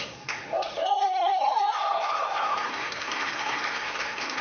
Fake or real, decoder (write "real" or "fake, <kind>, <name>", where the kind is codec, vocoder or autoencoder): fake, codec, SNAC